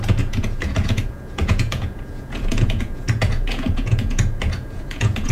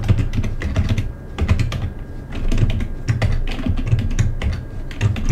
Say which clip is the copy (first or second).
first